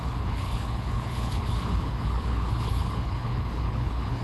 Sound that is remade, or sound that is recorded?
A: remade